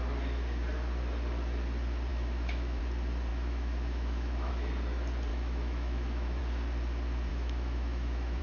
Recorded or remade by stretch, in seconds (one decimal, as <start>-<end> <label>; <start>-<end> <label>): 0.0-2.1 recorded; 2.1-2.8 remade; 2.8-3.3 recorded; 3.3-4.5 remade; 4.5-5.3 recorded; 5.3-6.4 remade; 6.4-7.3 recorded; 7.3-8.4 remade